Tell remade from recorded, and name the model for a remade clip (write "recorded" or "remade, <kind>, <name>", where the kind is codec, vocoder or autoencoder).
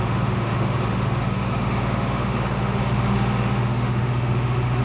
remade, autoencoder, DAC-VAE